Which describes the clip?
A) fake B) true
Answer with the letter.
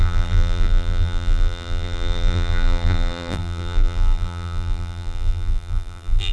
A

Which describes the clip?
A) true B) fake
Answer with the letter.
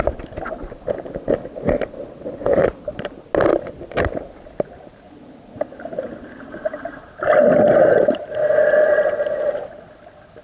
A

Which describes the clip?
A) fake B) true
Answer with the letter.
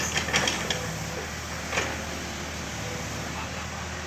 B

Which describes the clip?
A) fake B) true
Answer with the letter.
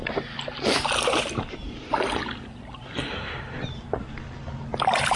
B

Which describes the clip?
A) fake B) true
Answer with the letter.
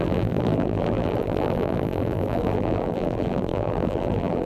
A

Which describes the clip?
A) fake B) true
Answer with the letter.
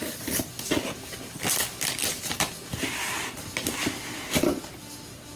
B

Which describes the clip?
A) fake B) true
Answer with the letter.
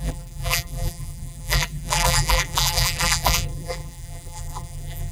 A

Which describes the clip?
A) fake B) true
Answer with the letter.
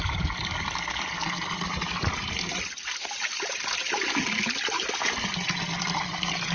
B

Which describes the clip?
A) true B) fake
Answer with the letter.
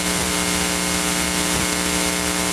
A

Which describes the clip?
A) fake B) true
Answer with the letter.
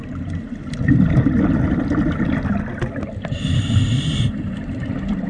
B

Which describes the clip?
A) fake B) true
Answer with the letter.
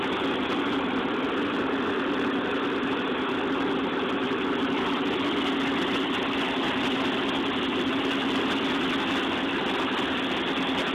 B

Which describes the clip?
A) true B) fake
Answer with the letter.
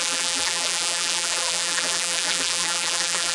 B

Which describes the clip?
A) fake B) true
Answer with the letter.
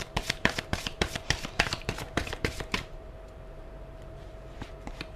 A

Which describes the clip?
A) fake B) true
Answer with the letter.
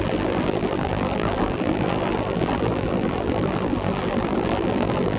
A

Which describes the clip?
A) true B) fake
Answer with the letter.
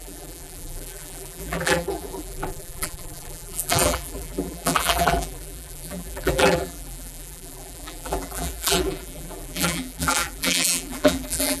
B